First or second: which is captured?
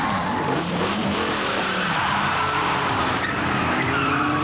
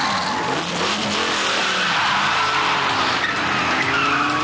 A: second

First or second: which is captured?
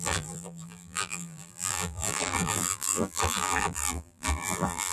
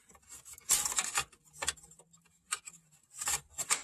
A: second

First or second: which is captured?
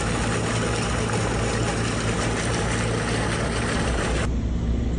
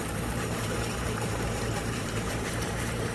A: first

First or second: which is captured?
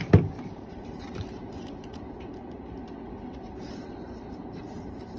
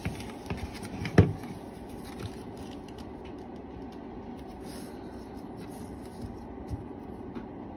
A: second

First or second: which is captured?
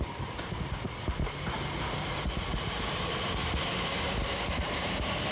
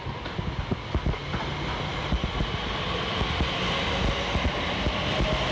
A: second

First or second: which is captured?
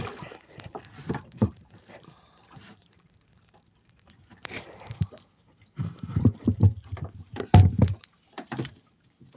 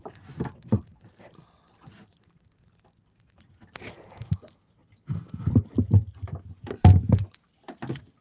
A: second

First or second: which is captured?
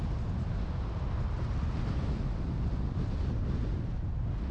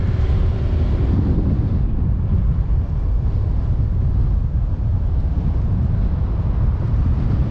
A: first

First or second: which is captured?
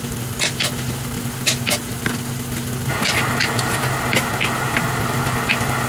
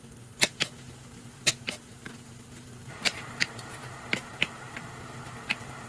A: first